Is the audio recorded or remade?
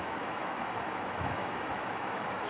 remade